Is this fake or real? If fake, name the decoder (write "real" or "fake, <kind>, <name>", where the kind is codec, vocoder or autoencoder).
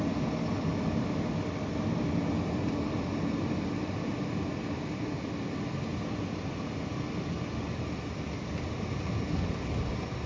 real